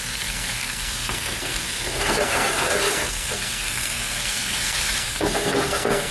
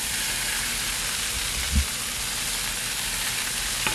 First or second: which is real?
second